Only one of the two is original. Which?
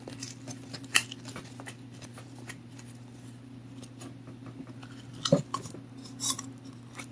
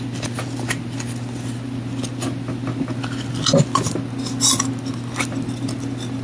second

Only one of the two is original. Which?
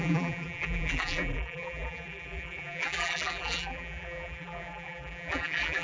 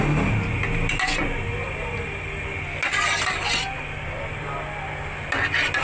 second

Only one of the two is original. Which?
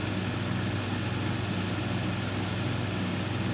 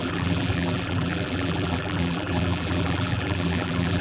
first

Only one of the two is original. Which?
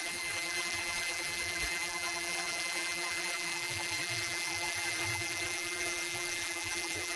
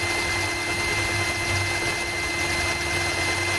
second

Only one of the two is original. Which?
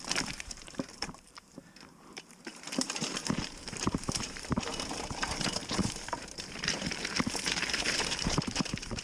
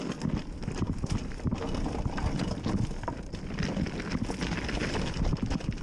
second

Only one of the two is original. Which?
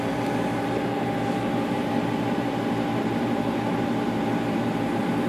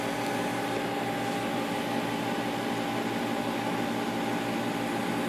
second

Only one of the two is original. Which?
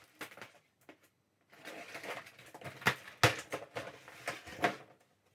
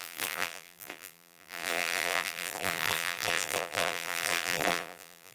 first